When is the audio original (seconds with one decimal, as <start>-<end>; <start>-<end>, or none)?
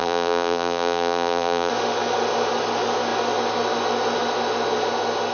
1.7-5.3